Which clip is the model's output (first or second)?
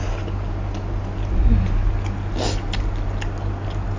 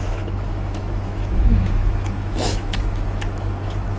second